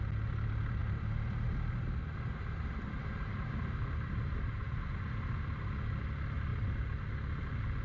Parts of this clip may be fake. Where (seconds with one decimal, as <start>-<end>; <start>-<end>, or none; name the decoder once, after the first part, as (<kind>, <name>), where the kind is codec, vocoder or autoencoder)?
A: 0.8-5.4 (vocoder, BigVGAN v2)